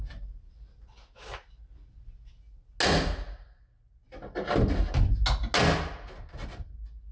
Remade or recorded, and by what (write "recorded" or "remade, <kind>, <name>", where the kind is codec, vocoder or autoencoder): recorded